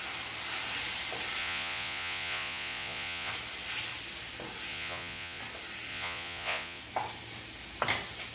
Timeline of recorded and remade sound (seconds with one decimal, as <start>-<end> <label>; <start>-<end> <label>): 0.0-1.4 recorded; 1.4-3.3 remade; 3.3-4.7 recorded; 4.7-5.4 remade; 5.4-5.9 recorded; 5.9-6.8 remade; 6.8-8.3 recorded